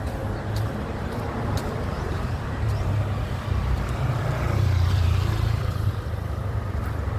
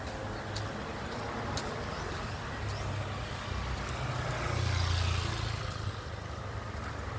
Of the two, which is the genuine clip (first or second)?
second